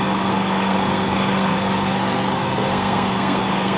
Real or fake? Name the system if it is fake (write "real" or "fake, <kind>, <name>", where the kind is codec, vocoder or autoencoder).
fake, codec, SNAC